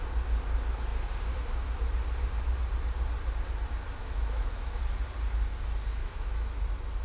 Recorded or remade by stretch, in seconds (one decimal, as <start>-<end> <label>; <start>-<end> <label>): 0.0-4.0 recorded; 4.0-4.8 remade; 4.8-6.0 recorded; 6.0-6.6 remade; 6.6-7.0 recorded